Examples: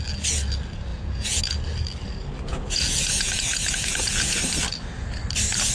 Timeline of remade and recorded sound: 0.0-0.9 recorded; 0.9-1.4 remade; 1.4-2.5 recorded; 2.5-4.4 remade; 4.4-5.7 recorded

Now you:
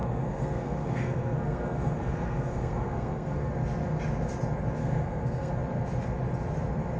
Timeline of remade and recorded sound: 0.0-3.5 remade; 3.5-4.8 recorded; 4.8-5.5 remade; 5.5-7.0 recorded

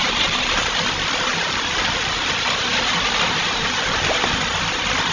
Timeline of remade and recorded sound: 0.0-0.7 remade; 0.7-1.3 recorded; 1.3-4.4 remade; 4.4-5.1 recorded

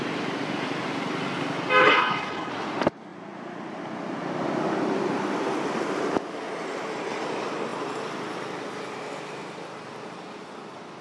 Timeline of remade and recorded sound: 0.0-1.8 recorded; 1.8-2.5 remade; 2.5-11.0 recorded

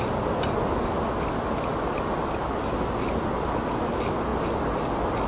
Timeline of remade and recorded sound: 0.0-5.3 recorded

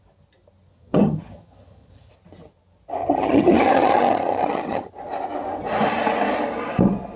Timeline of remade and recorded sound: 0.0-0.7 recorded; 0.7-2.1 remade; 2.1-3.0 recorded; 3.0-4.9 remade; 4.9-7.2 recorded

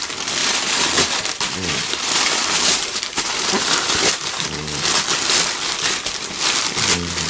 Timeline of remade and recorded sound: 0.0-0.4 recorded; 0.4-4.4 remade; 4.4-7.3 recorded

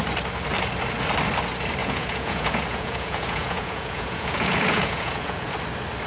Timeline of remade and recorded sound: 0.0-1.8 recorded; 1.8-5.5 remade; 5.5-6.1 recorded